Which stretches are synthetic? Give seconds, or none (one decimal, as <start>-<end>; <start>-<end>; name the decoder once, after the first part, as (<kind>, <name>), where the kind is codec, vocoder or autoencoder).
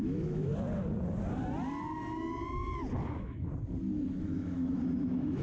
0.0-0.5 (autoencoder, DAC-VAE); 3.1-3.5; 4.2-5.4